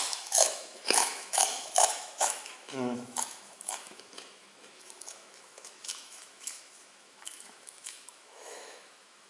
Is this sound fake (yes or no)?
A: yes